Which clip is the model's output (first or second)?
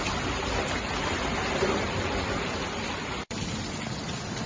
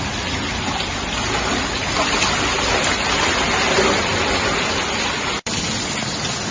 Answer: first